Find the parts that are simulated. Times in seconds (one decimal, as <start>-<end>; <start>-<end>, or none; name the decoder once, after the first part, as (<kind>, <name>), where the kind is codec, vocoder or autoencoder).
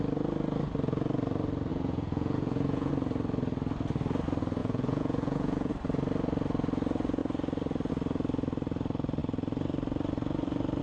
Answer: 1.7-2.9 (vocoder, Vocos); 4.6-5.7